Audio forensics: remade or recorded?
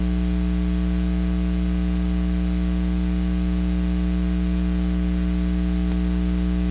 recorded